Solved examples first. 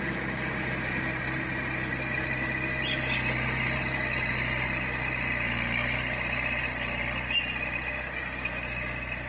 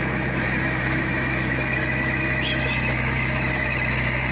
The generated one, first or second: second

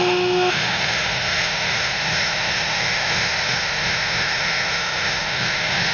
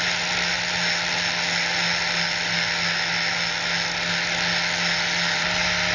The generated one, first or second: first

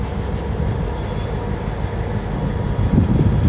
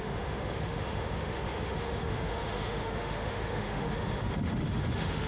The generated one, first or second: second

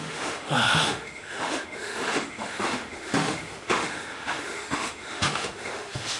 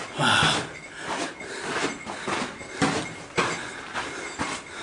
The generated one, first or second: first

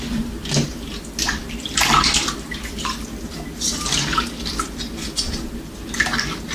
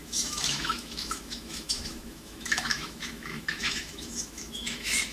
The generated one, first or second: second